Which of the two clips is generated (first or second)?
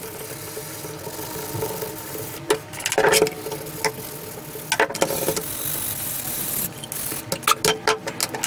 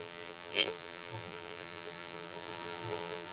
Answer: second